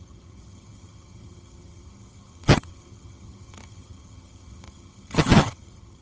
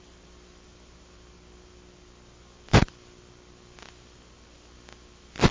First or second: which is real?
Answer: second